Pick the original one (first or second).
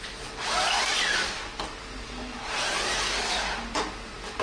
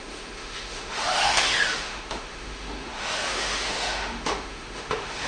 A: first